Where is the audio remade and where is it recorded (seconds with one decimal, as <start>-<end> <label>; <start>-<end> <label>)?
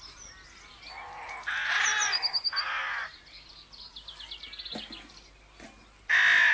0.0-6.5 recorded